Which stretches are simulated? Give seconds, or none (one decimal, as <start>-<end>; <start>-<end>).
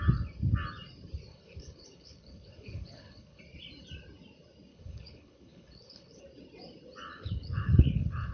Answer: 1.3-3.4; 4.7-6.2; 7.1-8.3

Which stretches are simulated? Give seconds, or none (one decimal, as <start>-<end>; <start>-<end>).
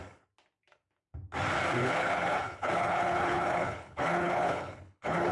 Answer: 1.8-5.3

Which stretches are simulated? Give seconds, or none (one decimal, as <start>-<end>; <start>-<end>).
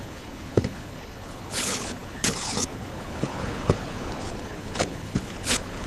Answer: 0.0-5.9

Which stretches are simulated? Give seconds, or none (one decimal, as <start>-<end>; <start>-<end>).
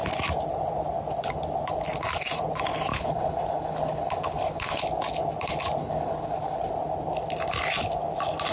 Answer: 2.9-4.8; 5.8-6.7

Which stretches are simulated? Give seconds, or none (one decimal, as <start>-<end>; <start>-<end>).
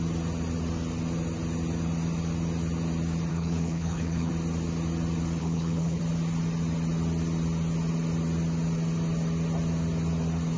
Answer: 3.3-4.3; 5.4-6.0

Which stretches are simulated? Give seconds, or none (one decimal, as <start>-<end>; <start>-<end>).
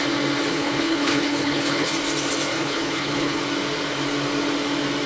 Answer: 0.5-1.9; 2.5-3.4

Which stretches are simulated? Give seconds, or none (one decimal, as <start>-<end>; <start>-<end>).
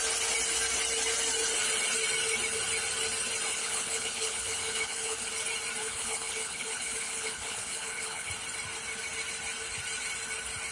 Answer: 3.5-5.3; 5.8-8.3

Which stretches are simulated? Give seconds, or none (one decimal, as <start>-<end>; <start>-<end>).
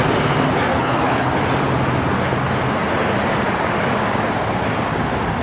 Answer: 0.7-1.3